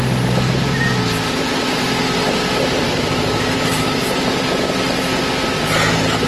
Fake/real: real